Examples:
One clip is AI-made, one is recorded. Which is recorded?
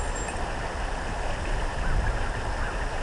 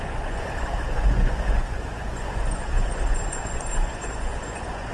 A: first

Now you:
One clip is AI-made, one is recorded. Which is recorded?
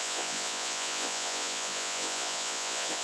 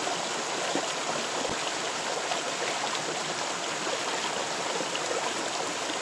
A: second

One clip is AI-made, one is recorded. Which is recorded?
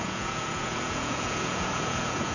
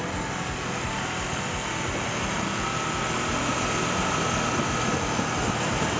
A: second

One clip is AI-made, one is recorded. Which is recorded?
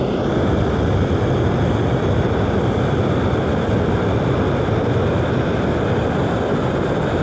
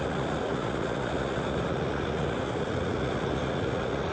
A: first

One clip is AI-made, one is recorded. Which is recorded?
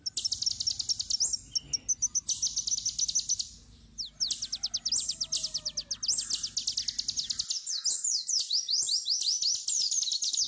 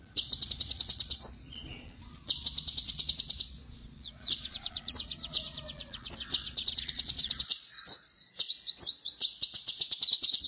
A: first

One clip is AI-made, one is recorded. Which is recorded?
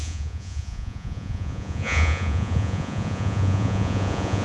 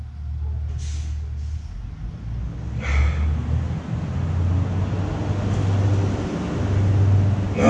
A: second